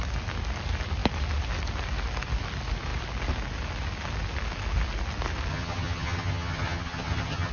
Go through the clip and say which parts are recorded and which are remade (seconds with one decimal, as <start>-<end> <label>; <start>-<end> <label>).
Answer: 0.0-5.5 recorded; 5.5-7.5 remade